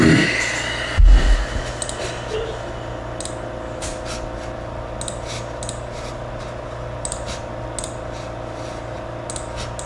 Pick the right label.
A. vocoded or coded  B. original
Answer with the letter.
B